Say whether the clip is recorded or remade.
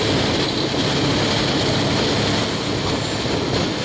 recorded